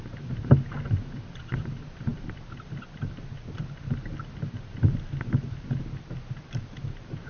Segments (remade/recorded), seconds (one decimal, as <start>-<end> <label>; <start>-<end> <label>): 0.0-7.3 recorded